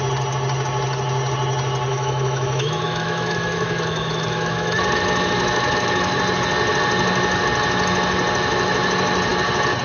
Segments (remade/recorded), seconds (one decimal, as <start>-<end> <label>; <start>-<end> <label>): 0.0-1.9 recorded; 1.9-6.2 remade; 6.2-9.8 recorded